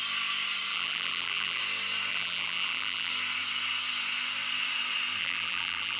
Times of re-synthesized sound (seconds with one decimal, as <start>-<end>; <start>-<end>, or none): 0.7-1.6; 2.1-3.1; 5.2-6.0